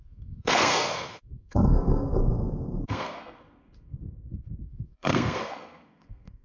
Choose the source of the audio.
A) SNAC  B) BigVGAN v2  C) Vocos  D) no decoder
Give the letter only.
A